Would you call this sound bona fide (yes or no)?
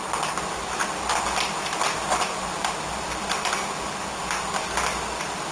yes